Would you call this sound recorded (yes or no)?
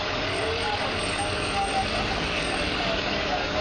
no